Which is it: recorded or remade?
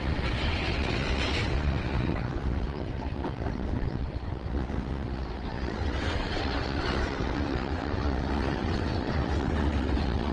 remade